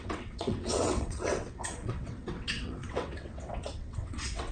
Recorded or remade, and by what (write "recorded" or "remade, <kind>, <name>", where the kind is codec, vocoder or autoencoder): remade, vocoder, WaveNeXt